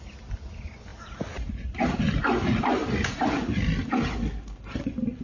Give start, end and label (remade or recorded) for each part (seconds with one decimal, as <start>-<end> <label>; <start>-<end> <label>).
0.0-5.2 recorded